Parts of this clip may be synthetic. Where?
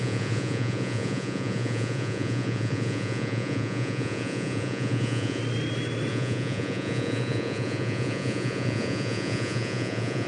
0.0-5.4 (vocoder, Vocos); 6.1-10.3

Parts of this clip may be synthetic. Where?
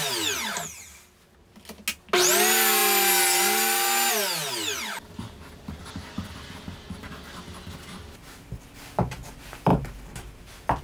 none